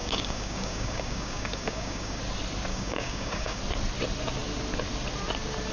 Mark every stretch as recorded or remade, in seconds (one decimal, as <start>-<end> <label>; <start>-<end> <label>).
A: 0.0-2.2 remade; 2.2-2.7 recorded; 2.7-3.6 remade; 3.6-5.7 recorded